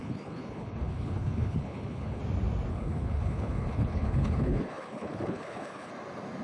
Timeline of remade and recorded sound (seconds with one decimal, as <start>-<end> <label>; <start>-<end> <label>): 0.0-2.2 remade; 2.2-2.7 recorded; 2.7-5.9 remade; 5.9-6.4 recorded